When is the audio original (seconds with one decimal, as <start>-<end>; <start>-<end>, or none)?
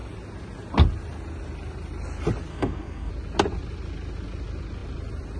0.0-2.5; 3.1-5.4